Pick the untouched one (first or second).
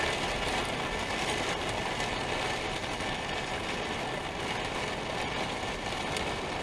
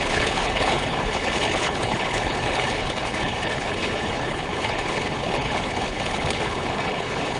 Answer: first